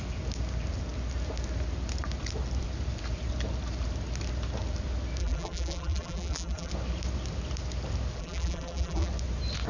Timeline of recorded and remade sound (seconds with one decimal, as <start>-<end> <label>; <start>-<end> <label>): 0.0-5.2 recorded; 5.2-6.7 remade; 6.7-8.2 recorded; 8.2-9.1 remade; 9.1-9.7 recorded